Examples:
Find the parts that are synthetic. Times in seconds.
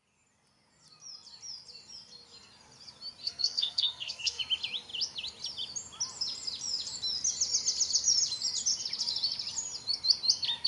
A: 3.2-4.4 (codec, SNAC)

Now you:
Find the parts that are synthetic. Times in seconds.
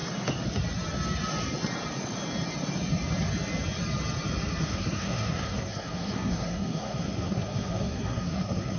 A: 4.6-8.8 (codec, SNAC)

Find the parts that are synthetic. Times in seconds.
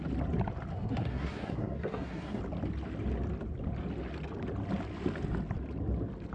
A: 0.7-2.4 (codec, SNAC)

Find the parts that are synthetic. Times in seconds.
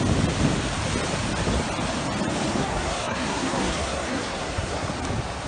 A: 2.6-4.9 (codec, SNAC)